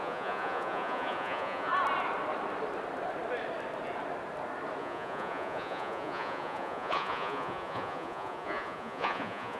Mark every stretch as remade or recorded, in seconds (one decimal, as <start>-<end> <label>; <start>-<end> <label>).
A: 0.0-1.7 remade; 1.7-4.8 recorded; 4.8-9.6 remade